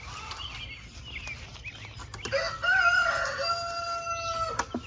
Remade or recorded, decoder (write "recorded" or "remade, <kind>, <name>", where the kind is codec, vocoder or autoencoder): recorded